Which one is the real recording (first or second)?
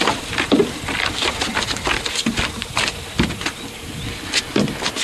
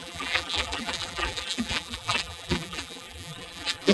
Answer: first